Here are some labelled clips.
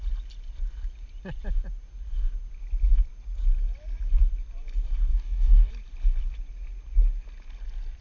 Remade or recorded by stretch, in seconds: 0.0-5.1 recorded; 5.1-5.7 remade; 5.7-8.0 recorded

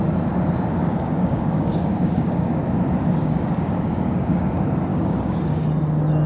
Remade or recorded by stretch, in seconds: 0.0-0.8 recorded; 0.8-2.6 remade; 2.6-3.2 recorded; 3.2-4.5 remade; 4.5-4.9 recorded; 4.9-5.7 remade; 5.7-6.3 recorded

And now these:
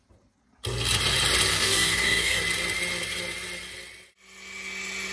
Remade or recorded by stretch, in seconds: 0.0-1.5 recorded; 1.5-2.4 remade; 2.4-5.1 recorded

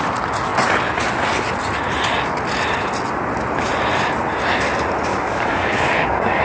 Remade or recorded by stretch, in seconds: 0.0-5.1 recorded; 5.1-6.4 remade

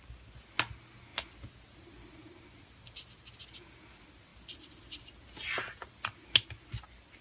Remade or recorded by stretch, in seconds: 0.0-7.2 recorded